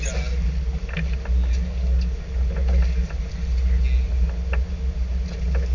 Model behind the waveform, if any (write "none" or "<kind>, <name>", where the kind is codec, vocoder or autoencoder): none